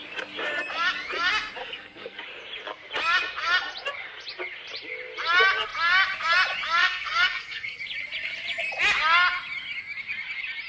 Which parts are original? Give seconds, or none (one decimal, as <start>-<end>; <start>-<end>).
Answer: 0.0-1.6; 2.2-6.8; 7.8-10.7